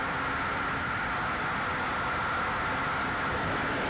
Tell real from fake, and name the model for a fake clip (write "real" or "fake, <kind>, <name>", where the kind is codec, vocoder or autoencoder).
real